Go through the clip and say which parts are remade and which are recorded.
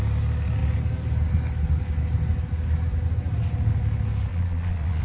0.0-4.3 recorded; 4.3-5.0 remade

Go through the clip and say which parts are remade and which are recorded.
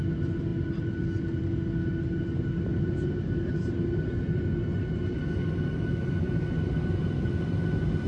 0.0-8.1 recorded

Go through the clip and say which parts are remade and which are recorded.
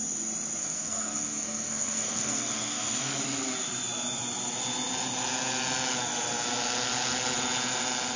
0.0-0.6 recorded; 0.6-3.2 remade; 3.2-8.2 recorded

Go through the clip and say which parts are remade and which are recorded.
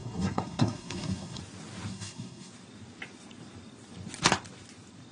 0.0-1.4 remade; 1.4-1.9 recorded; 1.9-2.5 remade; 2.5-5.1 recorded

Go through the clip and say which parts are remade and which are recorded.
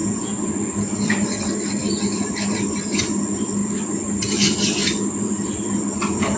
0.0-0.5 remade; 0.5-6.4 recorded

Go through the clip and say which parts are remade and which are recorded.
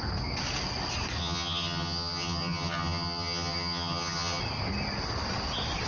0.0-1.2 recorded; 1.2-4.4 remade; 4.4-5.9 recorded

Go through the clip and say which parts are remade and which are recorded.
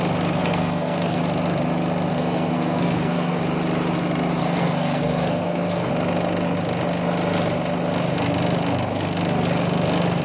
0.0-0.4 recorded; 0.4-1.2 remade; 1.2-2.1 recorded; 2.1-3.4 remade; 3.4-4.4 recorded; 4.4-5.9 remade; 5.9-10.2 recorded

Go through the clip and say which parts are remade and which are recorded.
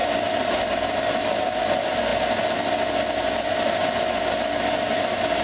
0.0-5.4 recorded